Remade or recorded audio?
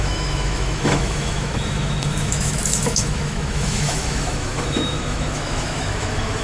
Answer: remade